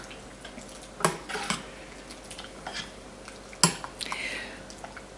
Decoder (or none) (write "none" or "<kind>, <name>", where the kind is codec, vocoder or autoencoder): none